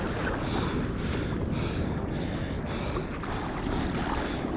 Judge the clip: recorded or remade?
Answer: recorded